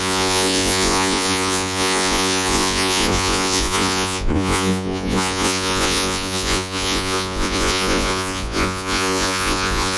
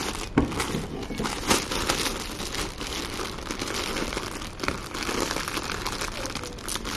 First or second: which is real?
second